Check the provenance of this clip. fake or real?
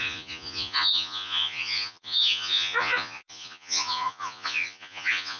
fake